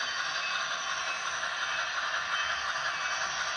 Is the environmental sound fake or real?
real